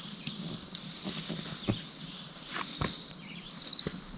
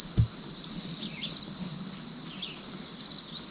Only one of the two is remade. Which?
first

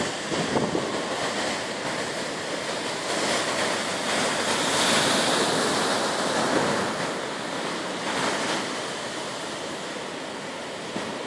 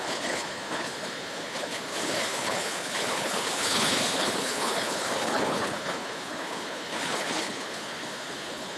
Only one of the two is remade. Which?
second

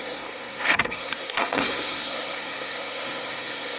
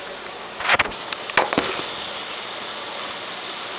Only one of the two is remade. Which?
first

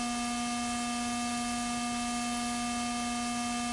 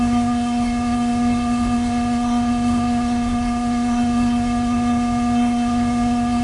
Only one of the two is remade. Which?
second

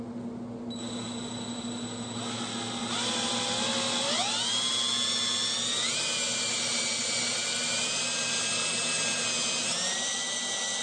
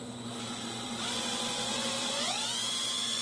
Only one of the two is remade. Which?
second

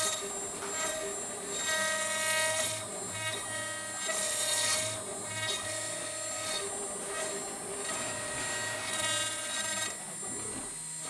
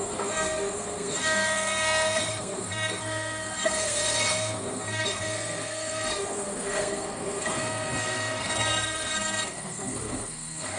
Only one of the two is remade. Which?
second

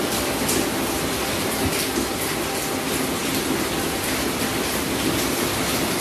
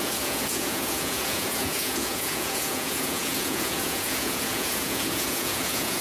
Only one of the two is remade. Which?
second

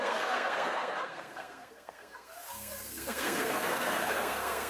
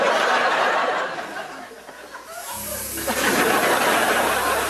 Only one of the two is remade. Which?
first